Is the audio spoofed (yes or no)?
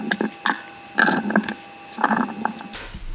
no